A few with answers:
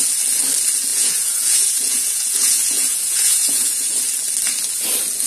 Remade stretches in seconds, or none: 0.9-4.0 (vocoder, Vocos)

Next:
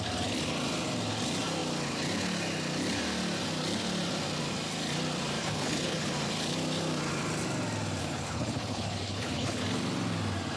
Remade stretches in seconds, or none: 5.4-6.1 (codec, HILCodec); 8.0-9.6

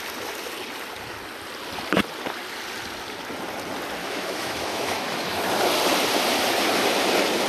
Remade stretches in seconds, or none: 4.0-5.4 (autoencoder, DAC-VAE)